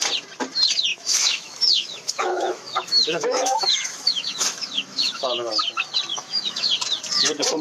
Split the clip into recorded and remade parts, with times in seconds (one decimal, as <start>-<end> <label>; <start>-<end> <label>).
0.0-0.9 recorded; 0.9-5.5 remade; 5.5-6.1 recorded; 6.1-6.7 remade; 6.7-7.6 recorded